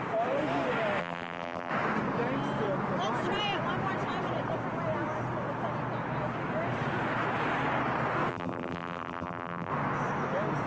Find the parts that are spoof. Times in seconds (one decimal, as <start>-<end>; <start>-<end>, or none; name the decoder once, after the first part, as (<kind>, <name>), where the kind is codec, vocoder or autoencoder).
1.0-1.7 (vocoder, BigVGAN v2); 8.3-9.7